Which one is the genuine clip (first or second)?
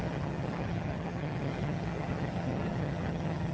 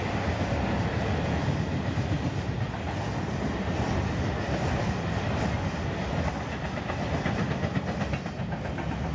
second